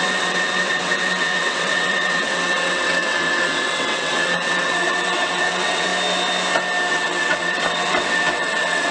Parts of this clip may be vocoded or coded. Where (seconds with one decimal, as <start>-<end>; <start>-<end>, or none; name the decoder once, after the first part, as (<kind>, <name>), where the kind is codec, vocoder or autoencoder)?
0.0-5.9 (vocoder, WaveNeXt); 6.9-8.9